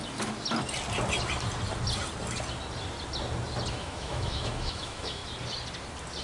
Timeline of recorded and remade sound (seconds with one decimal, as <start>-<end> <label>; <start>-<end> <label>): 0.0-3.7 recorded; 3.7-5.2 remade; 5.2-6.2 recorded